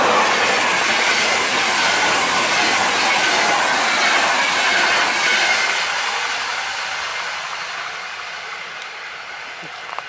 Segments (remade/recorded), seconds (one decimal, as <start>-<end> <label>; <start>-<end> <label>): 0.0-7.1 recorded; 7.1-9.5 remade; 9.5-10.1 recorded